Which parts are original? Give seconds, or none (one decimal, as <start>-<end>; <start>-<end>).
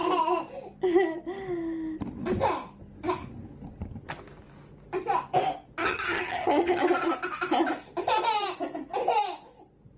0.0-5.8; 6.8-10.0